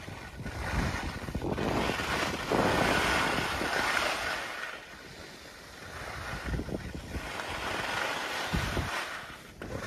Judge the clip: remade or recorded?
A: recorded